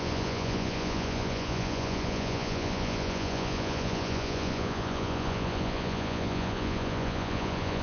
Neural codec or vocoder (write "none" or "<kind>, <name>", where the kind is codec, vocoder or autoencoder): vocoder, Vocos